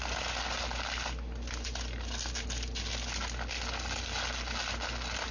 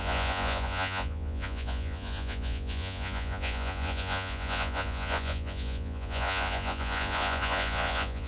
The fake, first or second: second